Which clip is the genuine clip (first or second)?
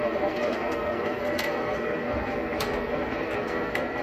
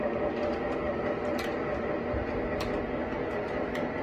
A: second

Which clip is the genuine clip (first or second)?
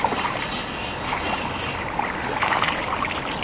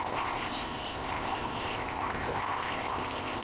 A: first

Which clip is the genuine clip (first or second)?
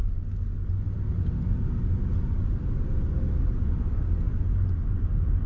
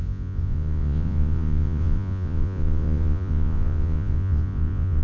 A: first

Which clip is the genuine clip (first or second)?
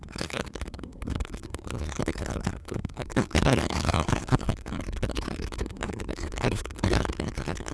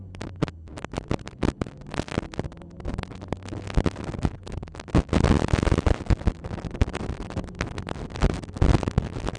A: second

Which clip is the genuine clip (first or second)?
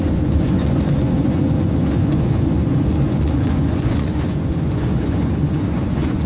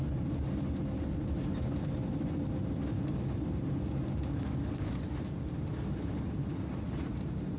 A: second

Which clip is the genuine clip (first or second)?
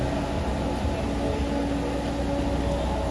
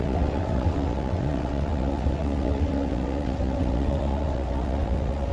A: first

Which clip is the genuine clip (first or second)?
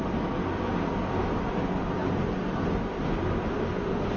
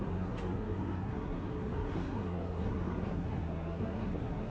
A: first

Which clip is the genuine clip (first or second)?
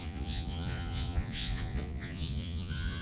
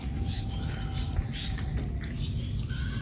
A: second